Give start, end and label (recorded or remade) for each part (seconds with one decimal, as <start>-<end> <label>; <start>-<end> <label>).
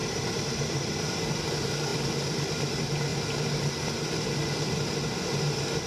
0.0-5.9 recorded